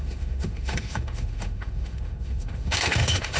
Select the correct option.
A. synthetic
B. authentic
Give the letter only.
A